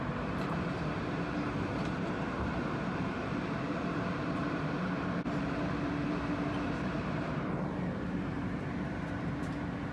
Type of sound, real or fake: fake